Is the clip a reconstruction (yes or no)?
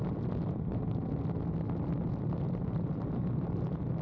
no